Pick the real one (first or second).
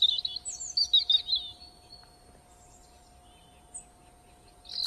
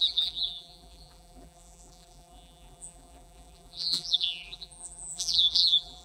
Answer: first